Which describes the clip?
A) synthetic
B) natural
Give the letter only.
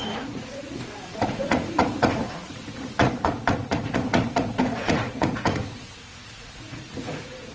A